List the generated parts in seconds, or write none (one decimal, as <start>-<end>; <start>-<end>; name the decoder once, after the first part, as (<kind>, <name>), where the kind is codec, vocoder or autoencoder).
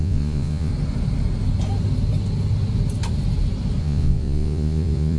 0.0-0.7 (vocoder, Vocos); 3.8-5.2